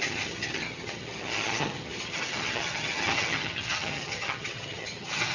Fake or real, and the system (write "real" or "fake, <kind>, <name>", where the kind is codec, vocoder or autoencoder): fake, vocoder, HiFi-GAN